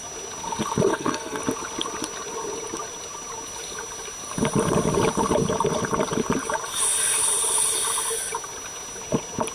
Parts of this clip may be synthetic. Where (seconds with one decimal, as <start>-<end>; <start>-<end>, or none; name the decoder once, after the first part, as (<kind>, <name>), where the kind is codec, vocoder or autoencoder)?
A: 0.9-1.4 (codec, SNAC)